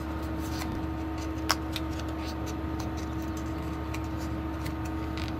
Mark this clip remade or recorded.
recorded